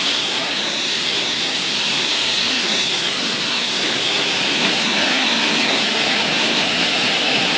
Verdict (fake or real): fake